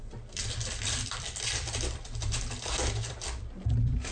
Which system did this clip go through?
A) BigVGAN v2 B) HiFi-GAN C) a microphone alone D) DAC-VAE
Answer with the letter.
A